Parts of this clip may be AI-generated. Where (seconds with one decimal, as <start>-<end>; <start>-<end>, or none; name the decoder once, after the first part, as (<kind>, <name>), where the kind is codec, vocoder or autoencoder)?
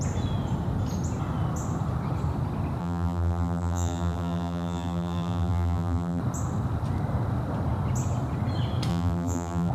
2.8-6.2 (vocoder, BigVGAN v2); 8.9-9.7